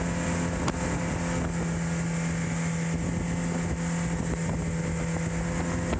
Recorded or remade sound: recorded